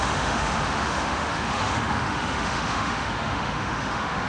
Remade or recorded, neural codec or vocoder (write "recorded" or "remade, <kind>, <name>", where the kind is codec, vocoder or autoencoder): remade, autoencoder, DAC-VAE